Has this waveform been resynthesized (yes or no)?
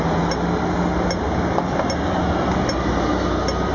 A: no